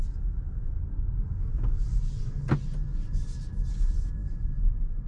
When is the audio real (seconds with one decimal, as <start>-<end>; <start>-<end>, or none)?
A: 0.0-5.1